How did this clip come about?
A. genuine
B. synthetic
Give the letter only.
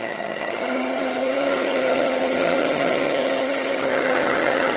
B